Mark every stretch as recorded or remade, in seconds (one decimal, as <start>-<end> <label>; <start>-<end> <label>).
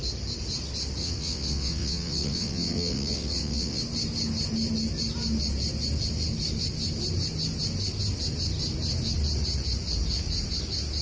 0.0-1.0 recorded; 1.0-3.8 remade; 3.8-11.0 recorded